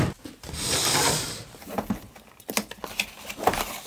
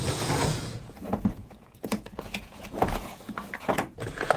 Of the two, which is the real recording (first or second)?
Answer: first